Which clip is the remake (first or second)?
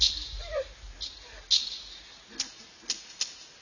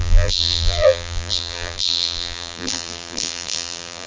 second